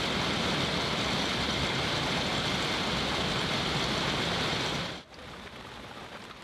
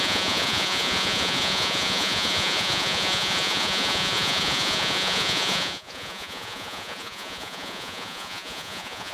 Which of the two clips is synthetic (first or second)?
second